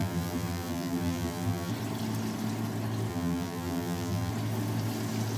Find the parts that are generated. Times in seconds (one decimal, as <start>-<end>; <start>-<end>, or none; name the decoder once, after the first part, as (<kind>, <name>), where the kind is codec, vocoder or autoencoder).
0.0-1.7 (vocoder, BigVGAN v2); 3.1-4.3